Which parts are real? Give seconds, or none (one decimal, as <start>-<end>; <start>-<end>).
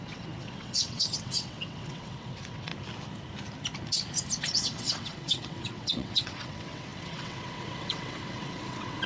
2.7-4.4